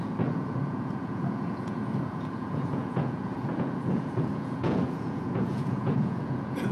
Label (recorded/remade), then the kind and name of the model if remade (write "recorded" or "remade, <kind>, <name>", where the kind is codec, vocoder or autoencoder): remade, vocoder, Vocos